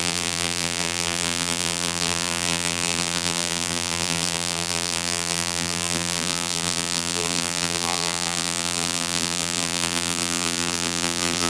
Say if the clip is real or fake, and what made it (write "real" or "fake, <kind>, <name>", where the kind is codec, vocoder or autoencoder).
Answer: fake, vocoder, BigVGAN v2